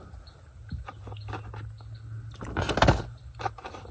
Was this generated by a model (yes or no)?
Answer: no